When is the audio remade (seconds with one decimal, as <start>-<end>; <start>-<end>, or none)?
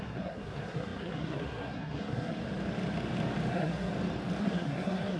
0.0-2.4; 3.5-3.9; 4.4-5.2